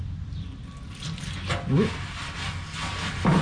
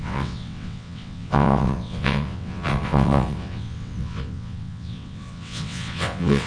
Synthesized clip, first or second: second